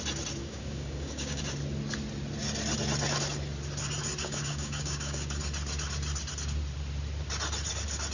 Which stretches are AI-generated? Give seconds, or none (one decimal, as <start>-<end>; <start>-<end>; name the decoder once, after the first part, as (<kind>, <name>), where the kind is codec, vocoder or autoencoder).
0.4-1.4 (codec, DAC); 4.2-5.4